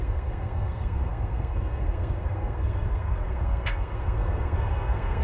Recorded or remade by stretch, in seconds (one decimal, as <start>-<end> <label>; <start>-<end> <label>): 0.0-5.2 remade